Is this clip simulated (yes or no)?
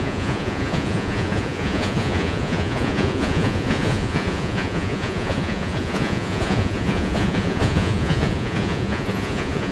yes